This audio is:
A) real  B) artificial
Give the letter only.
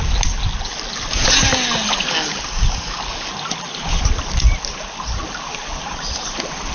A